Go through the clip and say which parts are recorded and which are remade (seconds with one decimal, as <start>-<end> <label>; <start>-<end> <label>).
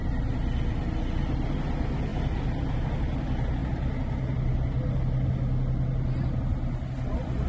0.0-7.5 recorded